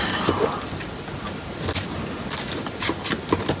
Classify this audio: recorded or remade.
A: recorded